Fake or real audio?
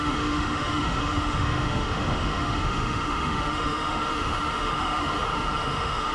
fake